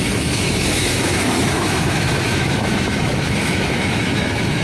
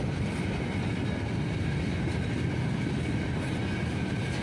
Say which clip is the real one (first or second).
second